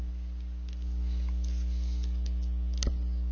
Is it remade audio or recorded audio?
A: recorded